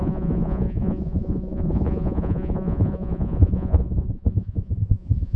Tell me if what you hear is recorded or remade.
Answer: remade